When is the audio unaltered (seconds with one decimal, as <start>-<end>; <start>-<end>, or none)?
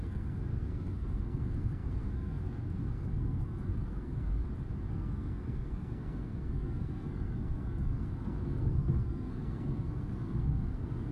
4.4-4.9